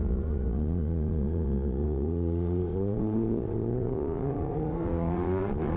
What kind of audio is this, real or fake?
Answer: fake